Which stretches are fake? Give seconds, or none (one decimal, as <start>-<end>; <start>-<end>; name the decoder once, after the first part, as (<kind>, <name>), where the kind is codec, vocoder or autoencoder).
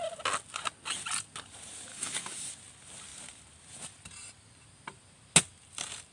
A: 1.9-2.5 (codec, DAC)